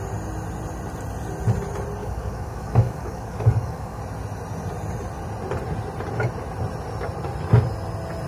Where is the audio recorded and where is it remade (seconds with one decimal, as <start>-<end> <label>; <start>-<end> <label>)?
0.0-2.0 recorded; 2.0-4.0 remade; 4.0-8.3 recorded